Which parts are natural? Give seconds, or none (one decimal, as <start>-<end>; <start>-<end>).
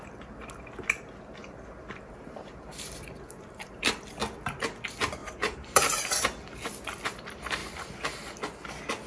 0.0-1.4; 4.2-5.2; 6.0-7.6; 8.3-9.1